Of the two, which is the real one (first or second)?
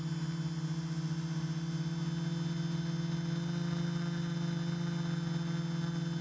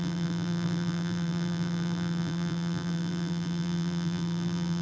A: first